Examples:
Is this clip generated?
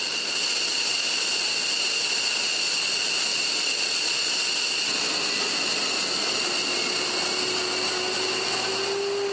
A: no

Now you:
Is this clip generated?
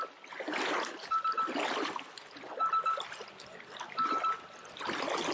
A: no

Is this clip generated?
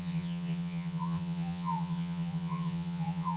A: yes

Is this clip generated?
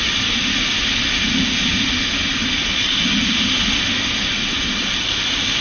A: no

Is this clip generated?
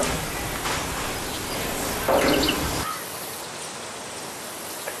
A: no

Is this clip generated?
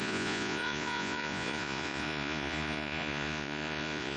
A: yes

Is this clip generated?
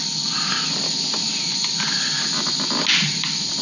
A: no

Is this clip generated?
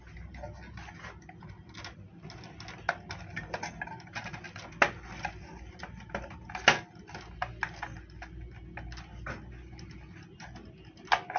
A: no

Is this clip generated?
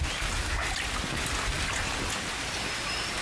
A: no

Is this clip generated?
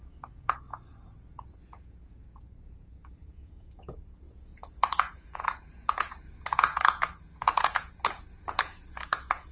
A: yes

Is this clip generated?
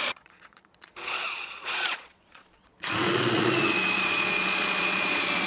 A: yes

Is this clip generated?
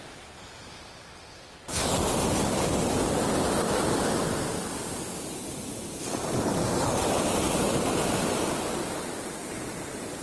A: no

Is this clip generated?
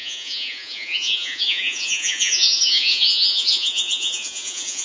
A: yes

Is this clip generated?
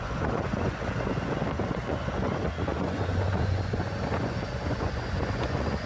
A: yes